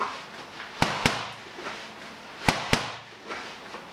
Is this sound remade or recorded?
recorded